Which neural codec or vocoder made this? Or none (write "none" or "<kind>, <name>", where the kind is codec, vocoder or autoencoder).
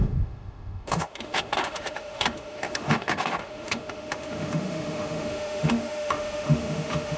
autoencoder, DAC-VAE